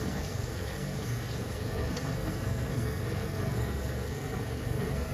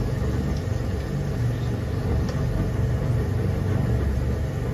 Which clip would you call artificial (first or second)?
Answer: first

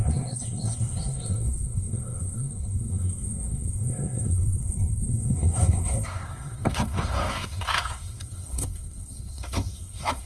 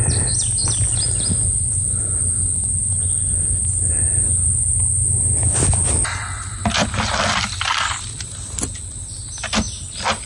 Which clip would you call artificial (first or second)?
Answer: first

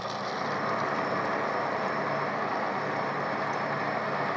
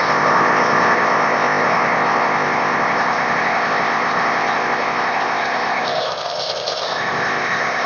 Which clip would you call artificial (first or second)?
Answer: second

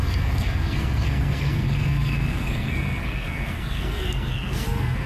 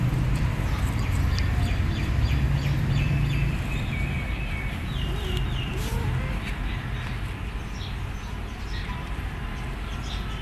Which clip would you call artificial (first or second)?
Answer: first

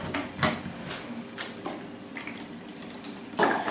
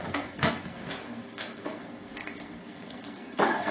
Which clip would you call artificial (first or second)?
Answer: second